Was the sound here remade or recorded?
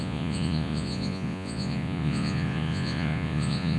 remade